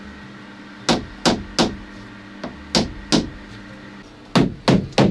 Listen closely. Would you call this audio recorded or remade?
recorded